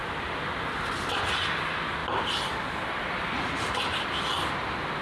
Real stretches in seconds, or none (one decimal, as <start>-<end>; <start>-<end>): 0.0-5.0